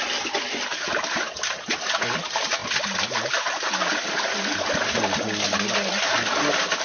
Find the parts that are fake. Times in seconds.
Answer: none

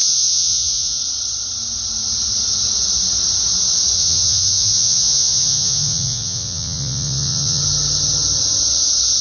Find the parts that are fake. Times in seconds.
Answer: 0.0-1.0 (vocoder, Vocos); 4.0-7.6

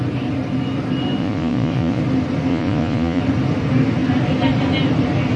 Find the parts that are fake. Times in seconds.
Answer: 1.2-2.0 (vocoder, Vocos); 2.5-3.2

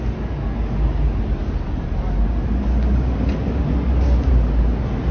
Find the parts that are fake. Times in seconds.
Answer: none

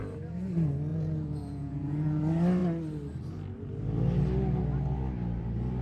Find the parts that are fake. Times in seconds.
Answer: 0.9-2.2 (vocoder, Vocos)

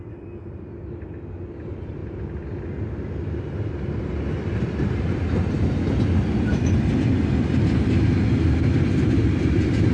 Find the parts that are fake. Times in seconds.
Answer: none